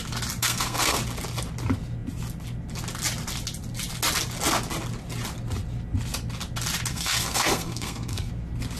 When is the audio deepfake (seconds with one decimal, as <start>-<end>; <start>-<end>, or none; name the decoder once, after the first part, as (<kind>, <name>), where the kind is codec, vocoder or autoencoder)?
0.4-1.0 (codec, SNAC); 6.9-8.3